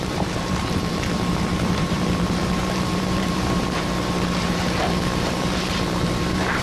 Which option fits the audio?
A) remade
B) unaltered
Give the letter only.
A